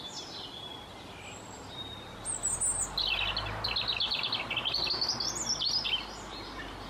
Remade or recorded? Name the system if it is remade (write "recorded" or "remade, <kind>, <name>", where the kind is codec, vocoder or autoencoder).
recorded